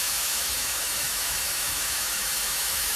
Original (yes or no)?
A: no